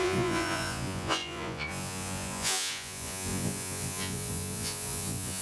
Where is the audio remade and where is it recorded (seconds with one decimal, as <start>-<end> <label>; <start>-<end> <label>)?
0.0-5.4 remade